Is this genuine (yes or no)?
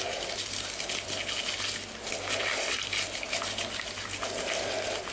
yes